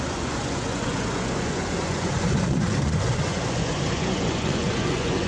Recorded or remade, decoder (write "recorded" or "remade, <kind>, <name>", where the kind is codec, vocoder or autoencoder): remade, vocoder, Vocos